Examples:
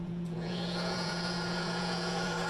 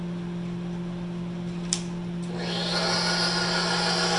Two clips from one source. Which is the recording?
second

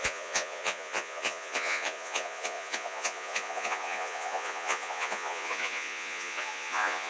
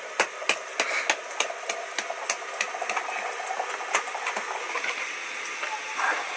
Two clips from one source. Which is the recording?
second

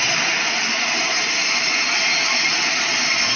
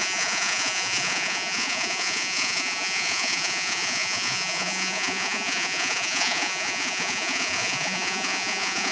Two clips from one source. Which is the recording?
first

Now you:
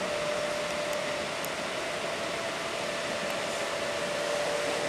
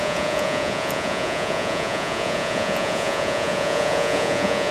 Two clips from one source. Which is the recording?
first